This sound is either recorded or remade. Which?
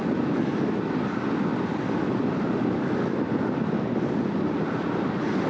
recorded